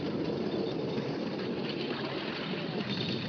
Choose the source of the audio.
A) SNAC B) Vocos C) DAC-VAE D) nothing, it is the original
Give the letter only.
D